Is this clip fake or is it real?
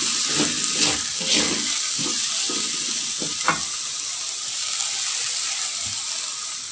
real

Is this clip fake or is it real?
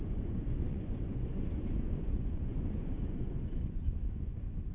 fake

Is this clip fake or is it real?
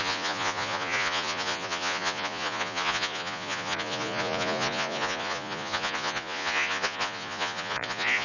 fake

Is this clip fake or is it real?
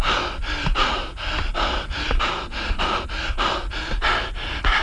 real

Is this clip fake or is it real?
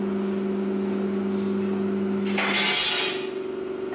real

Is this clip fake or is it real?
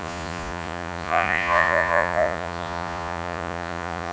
fake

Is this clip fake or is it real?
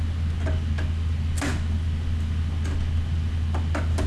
real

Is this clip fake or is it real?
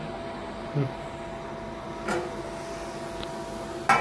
real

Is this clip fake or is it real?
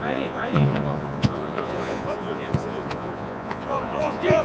fake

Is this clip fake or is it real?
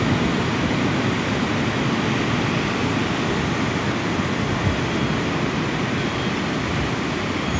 real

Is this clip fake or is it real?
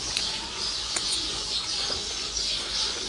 fake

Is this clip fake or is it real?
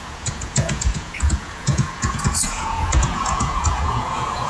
fake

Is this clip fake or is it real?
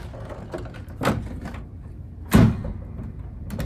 real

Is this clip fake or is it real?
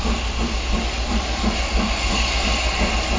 real